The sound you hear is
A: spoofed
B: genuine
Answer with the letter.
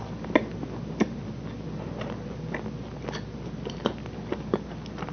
B